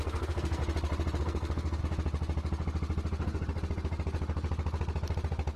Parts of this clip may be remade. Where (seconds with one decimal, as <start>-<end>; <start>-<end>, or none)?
0.0-0.6; 1.2-1.8